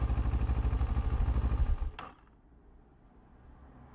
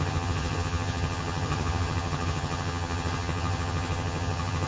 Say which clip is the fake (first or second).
second